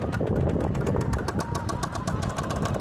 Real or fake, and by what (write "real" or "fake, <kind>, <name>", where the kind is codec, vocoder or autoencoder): fake, vocoder, BigVGAN v2